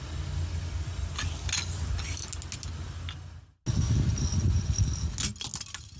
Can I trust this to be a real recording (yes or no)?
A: yes